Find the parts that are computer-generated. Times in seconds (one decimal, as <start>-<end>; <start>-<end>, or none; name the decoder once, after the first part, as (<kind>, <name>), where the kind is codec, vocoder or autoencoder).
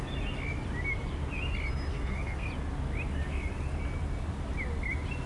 1.9-2.5 (codec, SNAC)